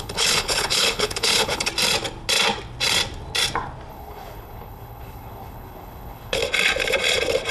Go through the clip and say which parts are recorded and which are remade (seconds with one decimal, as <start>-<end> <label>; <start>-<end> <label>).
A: 0.0-1.7 remade; 1.7-3.9 recorded; 3.9-6.4 remade; 6.4-7.5 recorded

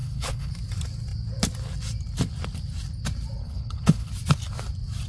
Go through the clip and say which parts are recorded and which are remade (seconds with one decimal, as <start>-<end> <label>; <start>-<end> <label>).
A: 0.0-0.5 remade; 0.5-3.4 recorded; 3.4-4.1 remade; 4.1-5.1 recorded